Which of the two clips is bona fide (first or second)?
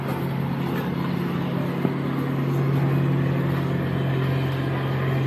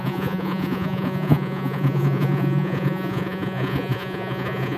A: first